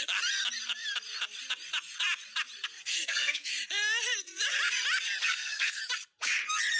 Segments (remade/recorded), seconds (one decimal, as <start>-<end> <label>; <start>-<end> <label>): 0.0-2.9 recorded; 2.9-3.5 remade; 3.5-5.2 recorded; 5.2-5.8 remade; 5.8-6.8 recorded